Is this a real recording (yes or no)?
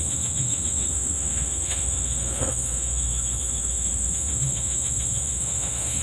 no